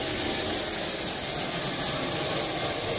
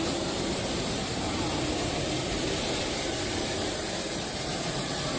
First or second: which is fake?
second